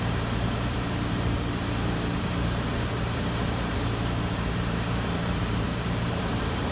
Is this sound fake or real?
fake